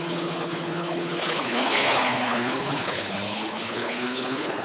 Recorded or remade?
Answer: remade